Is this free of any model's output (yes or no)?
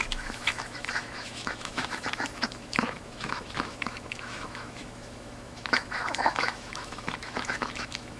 no